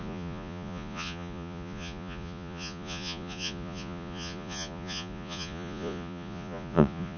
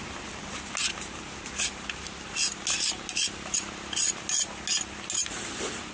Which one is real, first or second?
second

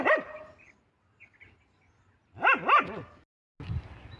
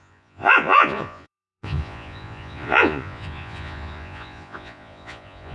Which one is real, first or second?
first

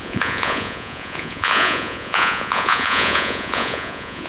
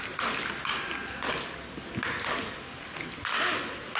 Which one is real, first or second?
second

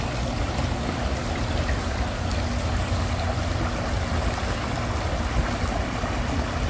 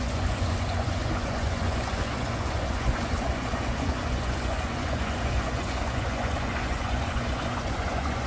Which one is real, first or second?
first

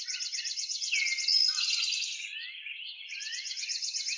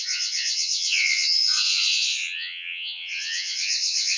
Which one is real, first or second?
first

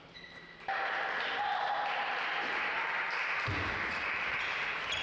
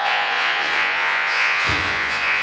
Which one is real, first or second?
first